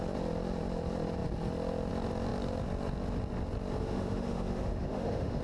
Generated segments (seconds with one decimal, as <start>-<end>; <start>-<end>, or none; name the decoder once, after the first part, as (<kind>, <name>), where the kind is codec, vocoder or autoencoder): 3.8-5.4 (autoencoder, DAC-VAE)